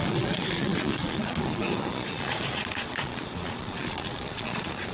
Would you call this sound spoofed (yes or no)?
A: yes